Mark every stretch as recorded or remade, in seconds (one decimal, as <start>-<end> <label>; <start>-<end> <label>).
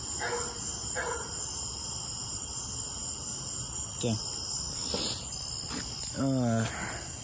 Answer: 0.0-7.2 recorded